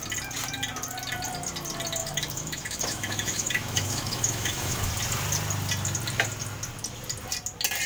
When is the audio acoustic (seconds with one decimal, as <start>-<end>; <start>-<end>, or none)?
0.0-2.0; 4.9-7.9